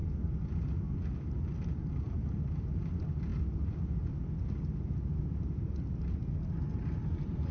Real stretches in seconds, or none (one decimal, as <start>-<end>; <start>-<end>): 0.0-7.5